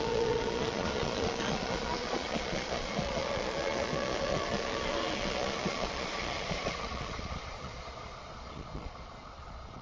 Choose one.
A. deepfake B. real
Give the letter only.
A